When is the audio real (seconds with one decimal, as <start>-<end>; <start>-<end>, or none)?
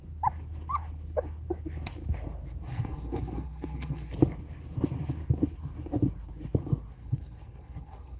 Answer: 0.0-2.7; 4.1-7.0